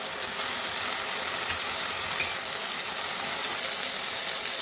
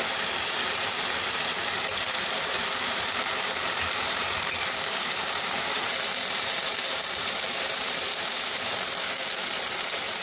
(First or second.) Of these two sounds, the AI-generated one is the second